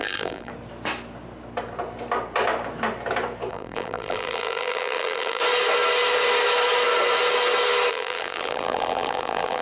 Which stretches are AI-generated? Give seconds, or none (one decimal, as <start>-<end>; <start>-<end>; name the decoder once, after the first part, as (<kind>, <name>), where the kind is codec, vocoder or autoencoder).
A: 0.0-0.5 (vocoder, BigVGAN v2); 3.5-5.4; 7.9-9.6